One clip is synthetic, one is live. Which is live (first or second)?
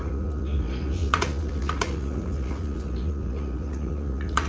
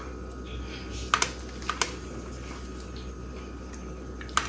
second